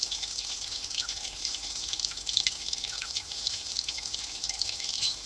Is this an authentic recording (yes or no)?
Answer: no